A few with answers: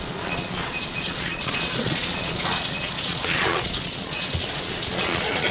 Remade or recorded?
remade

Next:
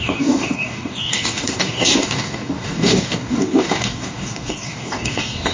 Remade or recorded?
remade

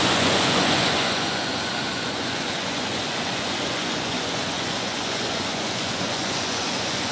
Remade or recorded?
remade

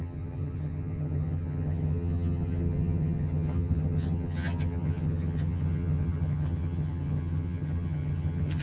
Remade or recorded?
remade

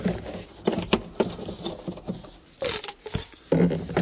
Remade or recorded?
recorded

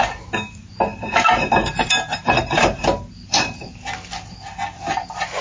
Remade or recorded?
recorded